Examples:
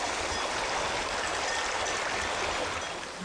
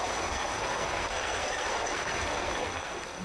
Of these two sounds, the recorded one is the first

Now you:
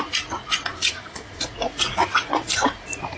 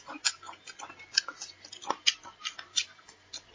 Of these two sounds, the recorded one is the second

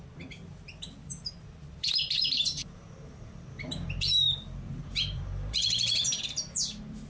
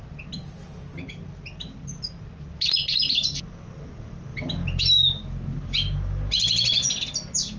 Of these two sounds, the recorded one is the second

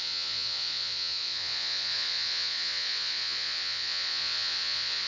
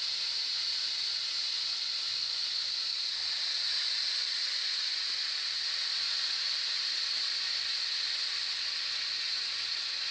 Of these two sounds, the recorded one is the second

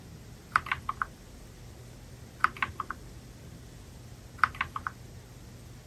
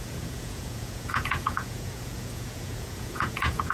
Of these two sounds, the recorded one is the first